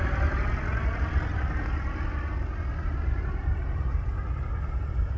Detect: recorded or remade recorded